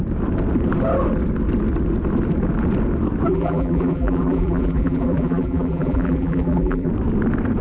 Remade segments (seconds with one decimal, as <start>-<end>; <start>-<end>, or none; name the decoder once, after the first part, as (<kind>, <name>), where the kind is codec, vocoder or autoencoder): 3.3-6.9 (vocoder, BigVGAN v2)